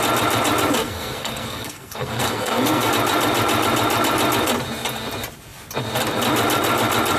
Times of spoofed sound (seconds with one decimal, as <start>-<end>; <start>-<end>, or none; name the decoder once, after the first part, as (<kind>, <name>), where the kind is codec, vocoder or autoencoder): 0.8-2.9 (codec, SNAC)